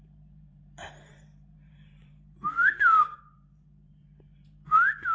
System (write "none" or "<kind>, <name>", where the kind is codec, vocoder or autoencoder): vocoder, BigVGAN v2